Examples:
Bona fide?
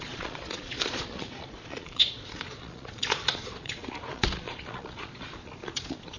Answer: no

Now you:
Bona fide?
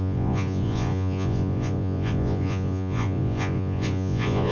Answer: no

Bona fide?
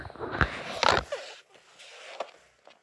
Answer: yes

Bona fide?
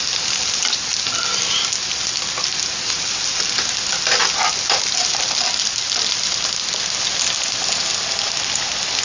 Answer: yes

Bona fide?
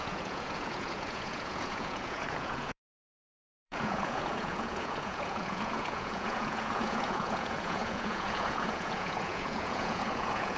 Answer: no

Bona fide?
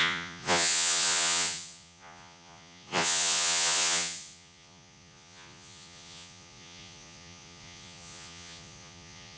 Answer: no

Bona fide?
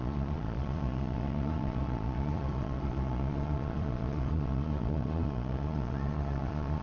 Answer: no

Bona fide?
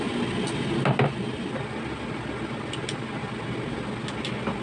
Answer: yes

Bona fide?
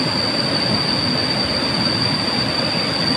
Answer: yes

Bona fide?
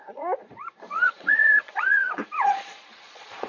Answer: no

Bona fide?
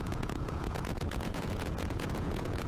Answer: no